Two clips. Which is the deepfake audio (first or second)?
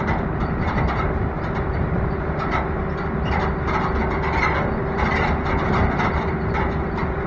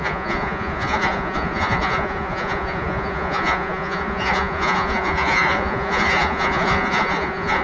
second